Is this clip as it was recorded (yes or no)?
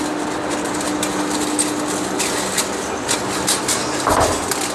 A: yes